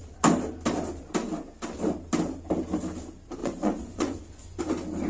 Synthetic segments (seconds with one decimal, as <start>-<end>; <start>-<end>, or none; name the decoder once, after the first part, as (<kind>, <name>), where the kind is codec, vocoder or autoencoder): 3.4-4.6 (vocoder, Vocos)